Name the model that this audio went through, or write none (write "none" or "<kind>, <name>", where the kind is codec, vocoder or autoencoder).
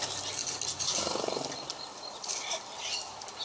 none